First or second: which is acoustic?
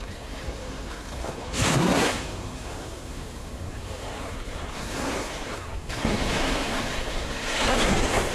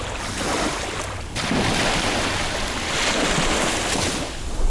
second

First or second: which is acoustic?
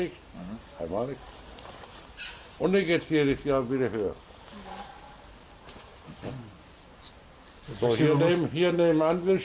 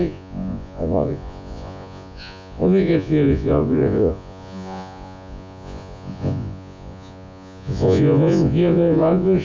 first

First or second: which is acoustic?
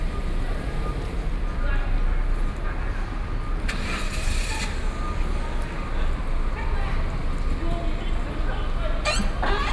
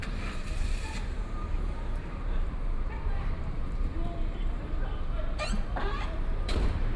first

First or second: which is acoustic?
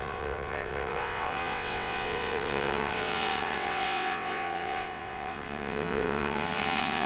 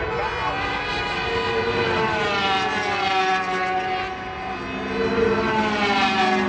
second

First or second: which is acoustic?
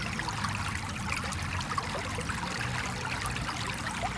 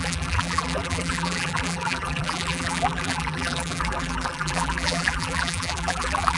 first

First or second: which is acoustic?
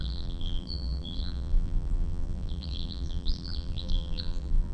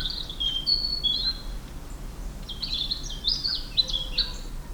second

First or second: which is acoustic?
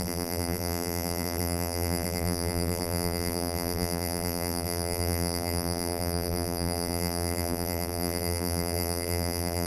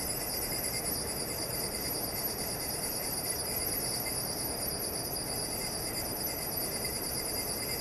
second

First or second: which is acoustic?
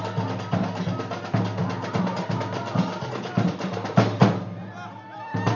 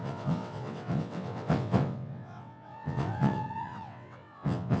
first